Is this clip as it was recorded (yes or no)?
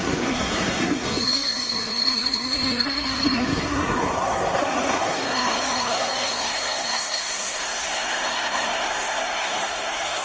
no